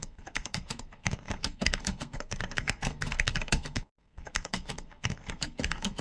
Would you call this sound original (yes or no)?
no